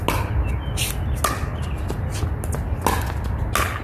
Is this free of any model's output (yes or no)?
yes